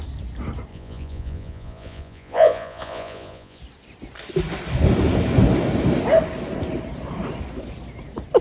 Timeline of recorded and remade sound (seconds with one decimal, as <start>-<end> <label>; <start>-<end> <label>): 0.0-0.7 recorded; 0.7-3.6 remade; 3.6-8.4 recorded